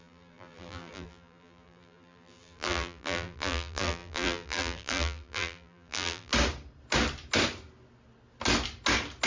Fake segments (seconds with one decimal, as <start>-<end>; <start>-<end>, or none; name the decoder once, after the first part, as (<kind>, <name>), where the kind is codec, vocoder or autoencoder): 0.0-6.3 (vocoder, BigVGAN v2)